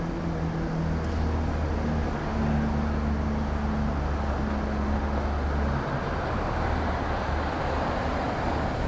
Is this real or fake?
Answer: real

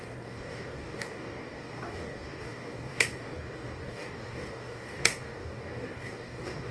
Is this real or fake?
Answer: fake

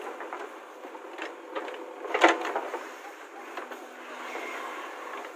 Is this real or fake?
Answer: real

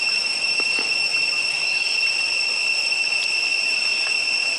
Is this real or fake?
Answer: real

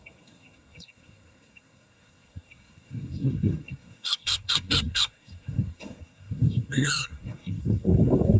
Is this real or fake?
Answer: fake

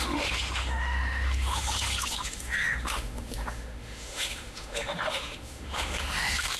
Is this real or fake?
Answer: fake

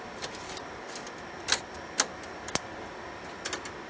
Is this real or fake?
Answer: real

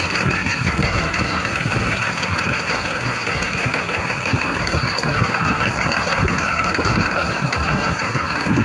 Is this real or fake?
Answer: fake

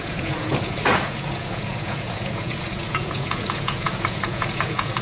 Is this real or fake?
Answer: fake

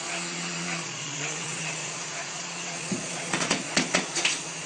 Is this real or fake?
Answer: fake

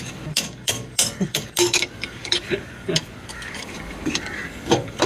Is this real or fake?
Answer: fake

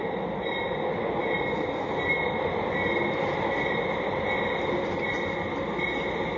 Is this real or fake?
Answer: real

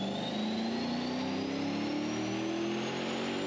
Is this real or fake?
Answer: real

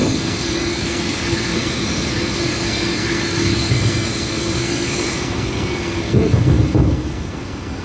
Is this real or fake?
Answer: fake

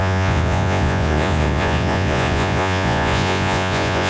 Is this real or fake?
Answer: fake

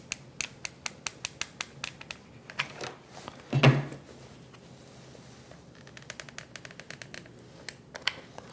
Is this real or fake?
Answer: real